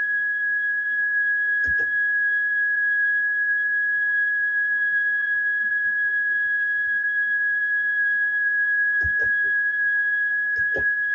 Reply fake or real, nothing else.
fake